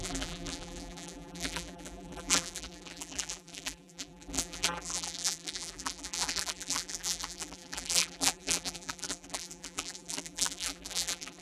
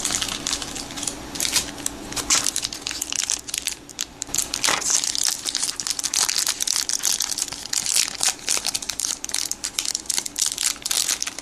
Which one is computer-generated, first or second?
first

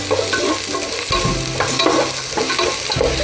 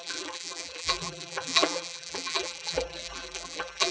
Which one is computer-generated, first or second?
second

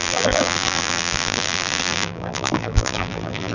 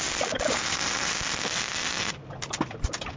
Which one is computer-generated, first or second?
first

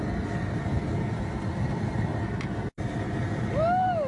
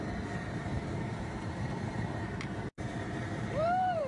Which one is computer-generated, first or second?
second